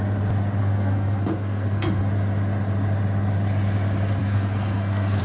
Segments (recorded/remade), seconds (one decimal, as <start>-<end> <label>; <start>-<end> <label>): 0.0-0.6 recorded; 0.6-2.0 remade; 2.0-4.2 recorded; 4.2-5.2 remade